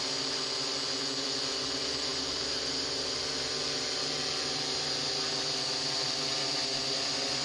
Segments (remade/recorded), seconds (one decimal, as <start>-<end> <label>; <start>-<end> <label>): 0.0-2.1 recorded; 2.1-3.2 remade; 3.2-7.4 recorded